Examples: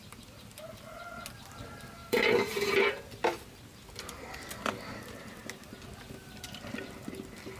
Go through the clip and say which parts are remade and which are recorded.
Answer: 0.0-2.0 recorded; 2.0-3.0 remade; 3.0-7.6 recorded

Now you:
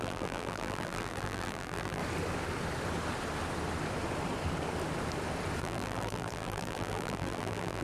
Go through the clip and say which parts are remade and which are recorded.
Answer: 0.0-2.0 remade; 2.0-5.6 recorded; 5.6-7.8 remade

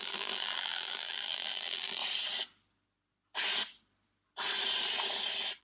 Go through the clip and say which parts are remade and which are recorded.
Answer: 0.0-2.0 remade; 2.0-5.6 recorded

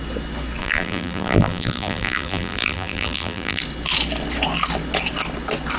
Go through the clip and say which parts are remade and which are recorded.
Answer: 0.0-0.6 recorded; 0.6-3.6 remade; 3.6-5.8 recorded

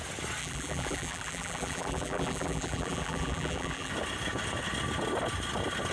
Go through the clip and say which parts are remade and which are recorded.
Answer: 0.0-0.4 recorded; 0.4-3.9 remade; 3.9-5.9 recorded

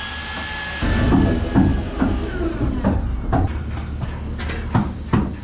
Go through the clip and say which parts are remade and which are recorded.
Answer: 0.0-1.7 recorded; 1.7-3.6 remade; 3.6-5.4 recorded

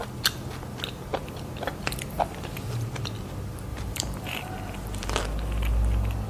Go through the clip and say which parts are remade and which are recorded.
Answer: 0.0-3.7 recorded; 3.7-5.2 remade; 5.2-6.3 recorded